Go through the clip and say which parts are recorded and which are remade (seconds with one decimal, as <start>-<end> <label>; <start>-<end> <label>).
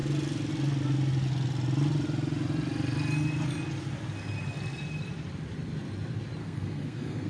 0.0-6.4 recorded; 6.4-7.3 remade